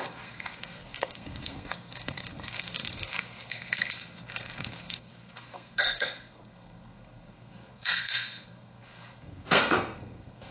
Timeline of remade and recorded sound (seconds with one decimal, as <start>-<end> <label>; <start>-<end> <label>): 0.0-10.5 remade